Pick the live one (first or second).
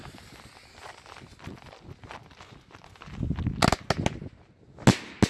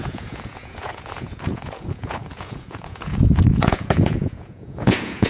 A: first